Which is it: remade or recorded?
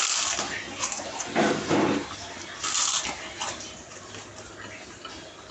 recorded